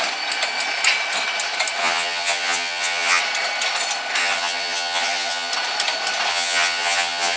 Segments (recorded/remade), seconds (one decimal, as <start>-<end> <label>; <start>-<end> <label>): 0.0-1.8 recorded; 1.8-3.2 remade; 3.2-4.2 recorded; 4.2-5.5 remade; 5.5-6.3 recorded; 6.3-7.4 remade